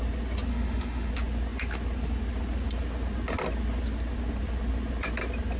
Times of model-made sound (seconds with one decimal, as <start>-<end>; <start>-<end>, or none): 0.5-1.1